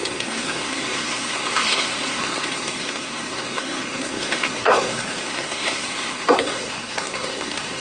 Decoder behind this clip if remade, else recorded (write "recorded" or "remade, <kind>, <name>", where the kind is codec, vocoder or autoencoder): remade, codec, SNAC